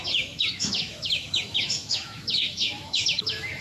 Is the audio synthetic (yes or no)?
yes